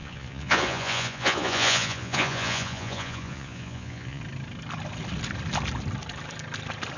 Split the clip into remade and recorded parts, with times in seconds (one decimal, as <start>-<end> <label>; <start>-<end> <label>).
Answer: 0.0-4.2 remade; 4.2-7.0 recorded